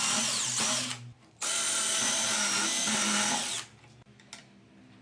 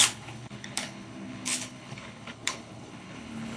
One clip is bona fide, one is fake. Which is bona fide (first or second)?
first